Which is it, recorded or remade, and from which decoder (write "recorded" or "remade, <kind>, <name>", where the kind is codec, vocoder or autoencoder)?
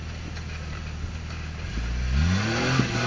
recorded